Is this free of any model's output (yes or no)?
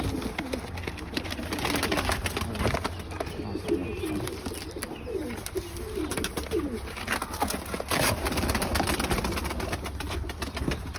yes